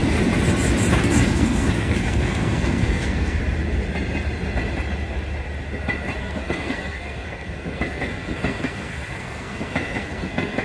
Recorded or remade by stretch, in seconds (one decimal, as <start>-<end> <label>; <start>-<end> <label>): 0.0-1.0 recorded; 1.0-3.4 remade; 3.4-6.2 recorded; 6.2-10.6 remade